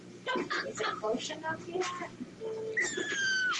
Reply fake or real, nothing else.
real